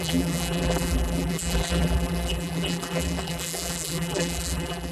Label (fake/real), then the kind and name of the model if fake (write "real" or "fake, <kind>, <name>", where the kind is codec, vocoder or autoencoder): fake, vocoder, BigVGAN v2